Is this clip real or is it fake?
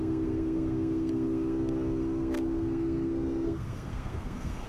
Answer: fake